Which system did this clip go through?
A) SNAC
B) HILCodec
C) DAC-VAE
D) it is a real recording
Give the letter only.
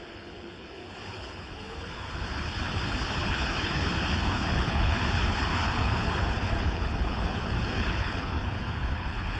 B